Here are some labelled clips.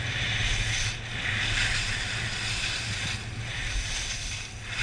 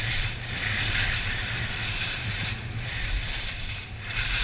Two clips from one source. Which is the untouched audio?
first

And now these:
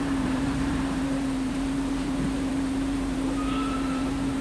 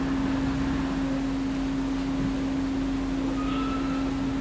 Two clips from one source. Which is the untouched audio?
second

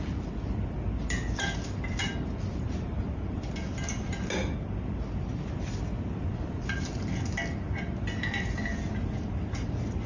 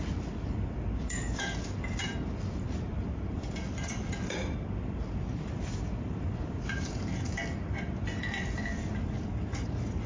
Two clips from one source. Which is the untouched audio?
first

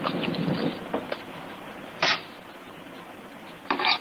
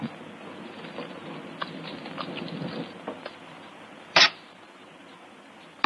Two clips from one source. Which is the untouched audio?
second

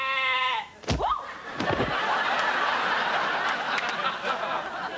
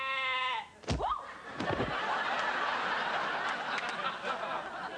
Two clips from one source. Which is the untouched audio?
second